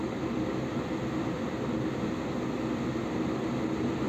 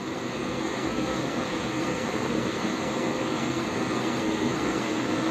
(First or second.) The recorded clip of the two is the first